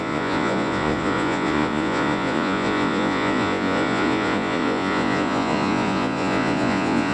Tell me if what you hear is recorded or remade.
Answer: remade